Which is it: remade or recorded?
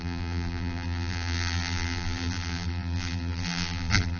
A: remade